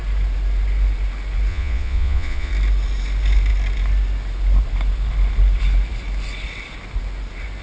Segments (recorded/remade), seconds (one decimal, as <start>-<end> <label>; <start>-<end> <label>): 0.0-1.5 recorded; 1.5-2.5 remade; 2.5-7.6 recorded